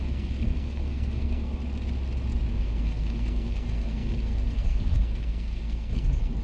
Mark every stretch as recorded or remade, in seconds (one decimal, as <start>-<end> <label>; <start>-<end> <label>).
0.0-1.6 remade; 1.6-2.5 recorded; 2.5-6.4 remade

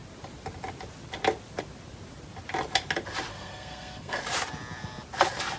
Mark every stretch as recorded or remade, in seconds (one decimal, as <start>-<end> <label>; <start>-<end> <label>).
0.0-3.3 recorded; 3.3-4.2 remade; 4.2-5.6 recorded

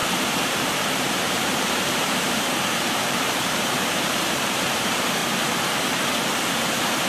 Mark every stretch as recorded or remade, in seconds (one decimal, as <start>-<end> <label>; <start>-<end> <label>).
0.0-5.2 remade; 5.2-7.1 recorded